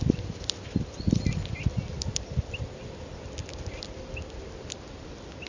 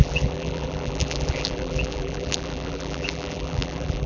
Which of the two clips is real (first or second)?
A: first